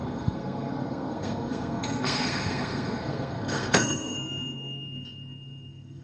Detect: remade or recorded remade